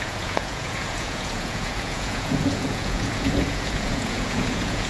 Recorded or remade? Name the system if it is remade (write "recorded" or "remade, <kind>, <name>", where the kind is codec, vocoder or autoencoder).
remade, vocoder, Vocos